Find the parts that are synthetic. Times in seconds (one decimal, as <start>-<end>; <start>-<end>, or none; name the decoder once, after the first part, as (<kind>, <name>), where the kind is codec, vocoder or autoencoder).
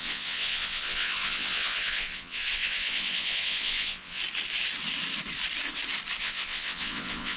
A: 0.0-4.2 (vocoder, WaveNeXt); 6.2-7.4